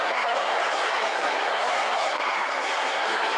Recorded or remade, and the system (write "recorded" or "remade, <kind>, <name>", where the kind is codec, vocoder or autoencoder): remade, codec, SNAC